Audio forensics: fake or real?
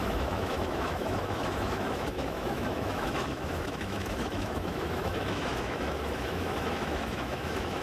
fake